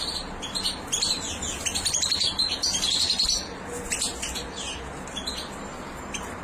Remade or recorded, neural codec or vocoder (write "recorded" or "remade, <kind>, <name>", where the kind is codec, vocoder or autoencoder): recorded